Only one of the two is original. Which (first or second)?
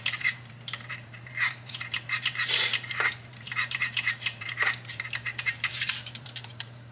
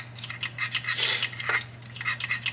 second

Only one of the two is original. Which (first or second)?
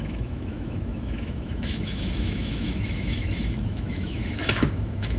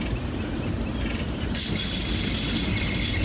second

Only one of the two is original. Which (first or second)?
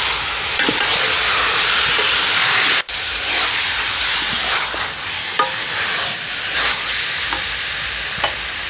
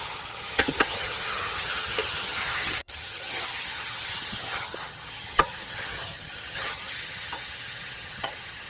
first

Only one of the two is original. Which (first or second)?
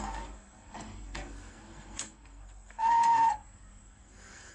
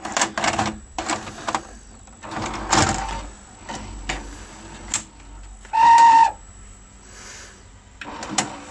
second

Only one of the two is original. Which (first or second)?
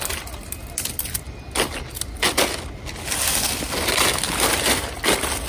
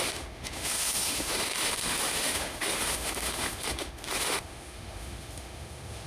first